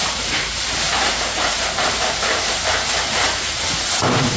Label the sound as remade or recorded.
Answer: remade